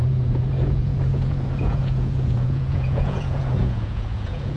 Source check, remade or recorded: remade